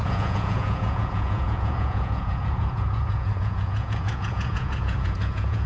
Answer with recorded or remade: remade